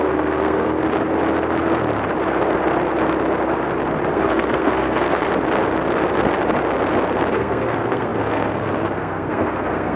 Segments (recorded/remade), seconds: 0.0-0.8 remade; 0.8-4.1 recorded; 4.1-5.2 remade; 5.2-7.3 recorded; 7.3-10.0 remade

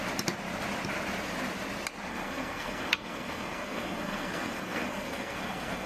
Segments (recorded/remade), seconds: 0.0-2.1 recorded; 2.1-5.9 remade

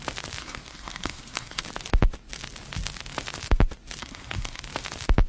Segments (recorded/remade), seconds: 0.0-0.4 recorded; 0.4-1.6 remade; 1.6-4.0 recorded; 4.0-4.6 remade; 4.6-5.3 recorded

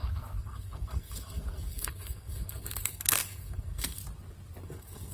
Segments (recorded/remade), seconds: 0.0-4.0 remade; 4.0-4.6 recorded; 4.6-5.1 remade

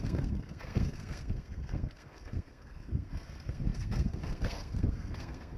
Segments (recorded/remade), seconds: 0.0-5.6 remade